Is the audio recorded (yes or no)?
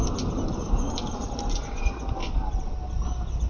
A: yes